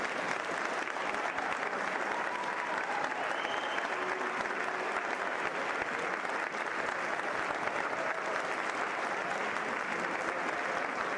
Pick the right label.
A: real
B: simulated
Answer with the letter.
A